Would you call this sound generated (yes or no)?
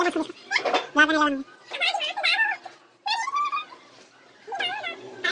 no